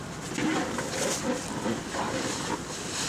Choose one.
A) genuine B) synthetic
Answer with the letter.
A